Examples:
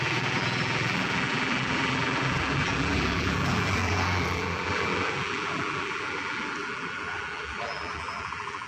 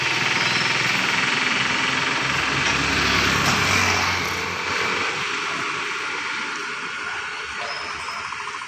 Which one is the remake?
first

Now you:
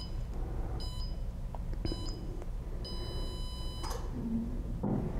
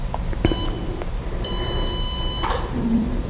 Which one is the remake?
second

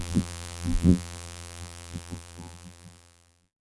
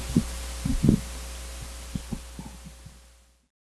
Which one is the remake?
first